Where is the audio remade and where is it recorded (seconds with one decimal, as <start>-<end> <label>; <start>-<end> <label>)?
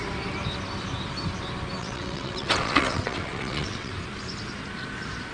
0.0-1.8 recorded; 1.8-3.9 remade; 3.9-5.3 recorded